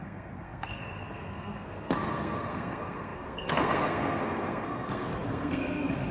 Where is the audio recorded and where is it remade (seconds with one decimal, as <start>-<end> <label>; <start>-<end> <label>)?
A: 0.0-6.1 remade